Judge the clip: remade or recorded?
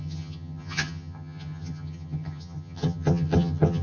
remade